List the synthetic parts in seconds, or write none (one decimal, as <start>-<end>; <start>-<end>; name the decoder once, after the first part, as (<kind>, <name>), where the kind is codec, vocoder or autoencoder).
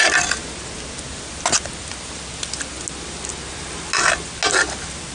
none